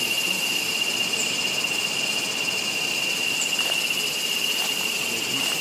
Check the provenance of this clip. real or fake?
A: real